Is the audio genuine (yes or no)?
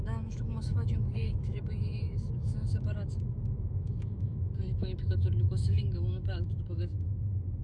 no